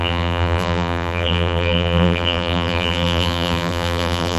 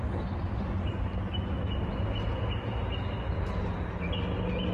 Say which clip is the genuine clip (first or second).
second